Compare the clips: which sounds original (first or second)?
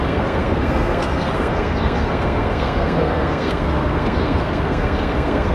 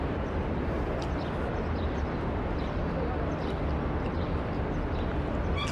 second